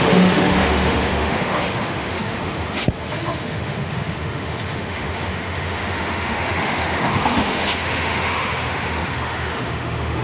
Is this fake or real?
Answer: fake